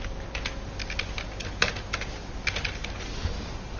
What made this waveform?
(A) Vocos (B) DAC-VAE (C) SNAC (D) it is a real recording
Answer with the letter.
D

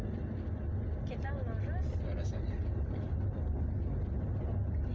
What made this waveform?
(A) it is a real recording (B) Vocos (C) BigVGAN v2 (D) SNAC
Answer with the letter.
A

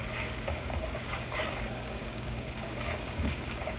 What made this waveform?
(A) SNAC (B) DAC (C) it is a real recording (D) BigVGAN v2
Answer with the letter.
B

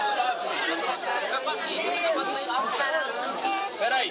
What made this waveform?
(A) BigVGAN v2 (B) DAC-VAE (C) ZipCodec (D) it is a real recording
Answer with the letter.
A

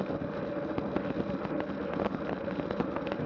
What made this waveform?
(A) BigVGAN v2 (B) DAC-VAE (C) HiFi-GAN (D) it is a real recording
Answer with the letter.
D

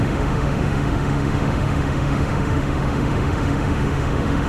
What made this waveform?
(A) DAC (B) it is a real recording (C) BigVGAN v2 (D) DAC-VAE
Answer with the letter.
D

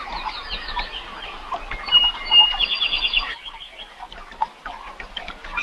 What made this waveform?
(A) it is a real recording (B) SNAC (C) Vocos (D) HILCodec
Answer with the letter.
A